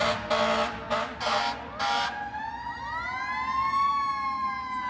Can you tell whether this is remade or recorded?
recorded